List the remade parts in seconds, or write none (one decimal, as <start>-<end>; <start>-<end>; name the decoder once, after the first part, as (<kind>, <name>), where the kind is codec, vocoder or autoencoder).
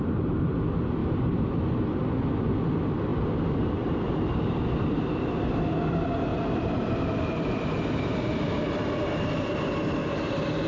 1.0-1.5 (vocoder, BigVGAN v2); 3.1-5.1; 6.3-8.6